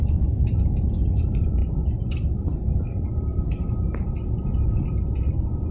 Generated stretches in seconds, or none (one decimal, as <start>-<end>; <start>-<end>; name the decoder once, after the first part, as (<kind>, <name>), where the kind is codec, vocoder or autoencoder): none

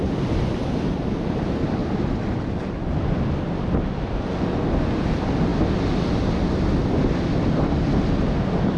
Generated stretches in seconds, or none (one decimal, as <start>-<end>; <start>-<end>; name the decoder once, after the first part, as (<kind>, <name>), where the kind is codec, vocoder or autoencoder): 1.8-2.5 (vocoder, BigVGAN v2)

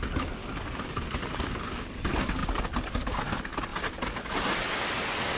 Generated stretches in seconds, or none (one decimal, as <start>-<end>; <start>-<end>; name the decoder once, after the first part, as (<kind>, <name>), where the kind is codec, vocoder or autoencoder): 0.4-1.8 (vocoder, BigVGAN v2); 2.4-3.2; 3.7-4.4

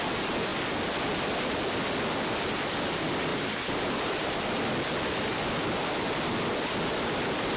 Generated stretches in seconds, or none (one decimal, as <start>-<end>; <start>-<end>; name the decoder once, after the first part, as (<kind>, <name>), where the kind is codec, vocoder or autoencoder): 3.3-4.4 (vocoder, BigVGAN v2)